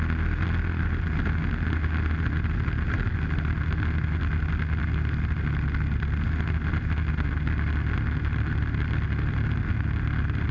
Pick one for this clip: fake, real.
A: real